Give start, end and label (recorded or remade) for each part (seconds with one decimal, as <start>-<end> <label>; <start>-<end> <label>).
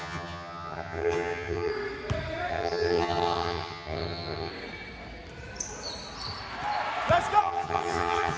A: 0.0-1.7 remade; 1.7-2.5 recorded; 2.5-4.5 remade; 4.5-7.4 recorded; 7.4-8.4 remade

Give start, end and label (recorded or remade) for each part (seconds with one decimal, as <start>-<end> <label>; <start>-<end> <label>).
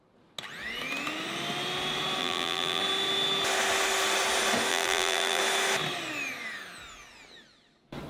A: 0.0-2.2 recorded; 2.2-2.8 remade; 2.8-4.7 recorded; 4.7-5.4 remade; 5.4-8.1 recorded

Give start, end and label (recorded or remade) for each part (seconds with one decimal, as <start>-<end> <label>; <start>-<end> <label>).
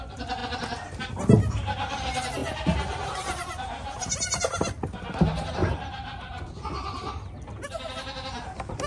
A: 0.0-2.4 recorded; 2.4-4.4 remade; 4.4-5.6 recorded; 5.6-6.4 remade; 6.4-8.9 recorded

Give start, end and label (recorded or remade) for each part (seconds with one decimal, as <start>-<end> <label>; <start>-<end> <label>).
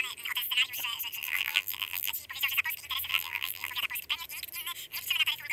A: 0.0-1.2 recorded; 1.2-2.1 remade; 2.1-3.1 recorded; 3.1-3.7 remade; 3.7-5.5 recorded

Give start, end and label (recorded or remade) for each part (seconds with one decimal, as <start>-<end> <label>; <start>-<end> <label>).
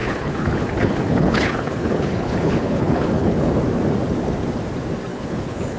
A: 0.0-3.5 remade; 3.5-5.1 recorded; 5.1-5.8 remade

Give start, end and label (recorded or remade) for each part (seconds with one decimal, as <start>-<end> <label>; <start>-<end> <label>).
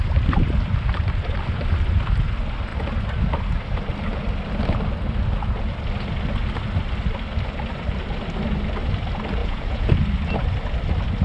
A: 0.0-9.4 recorded; 9.4-9.9 remade; 9.9-11.2 recorded